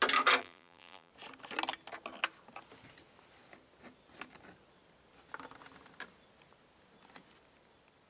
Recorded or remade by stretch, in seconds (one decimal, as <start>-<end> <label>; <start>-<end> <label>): 0.0-0.4 recorded; 0.4-1.1 remade; 1.1-8.1 recorded